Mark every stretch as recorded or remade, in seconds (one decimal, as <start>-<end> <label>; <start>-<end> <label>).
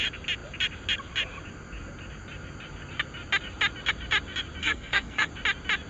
0.0-4.6 recorded; 4.6-5.3 remade; 5.3-5.9 recorded